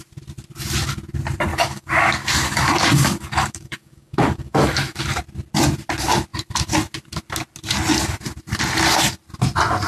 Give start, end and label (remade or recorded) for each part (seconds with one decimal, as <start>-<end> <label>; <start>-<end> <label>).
0.0-1.5 recorded; 1.5-5.2 remade; 5.2-9.9 recorded